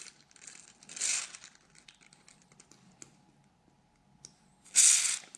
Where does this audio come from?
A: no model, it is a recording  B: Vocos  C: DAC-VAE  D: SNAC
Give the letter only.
A